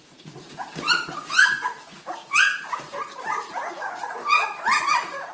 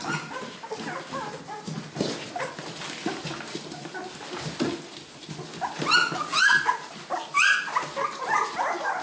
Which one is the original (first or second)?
second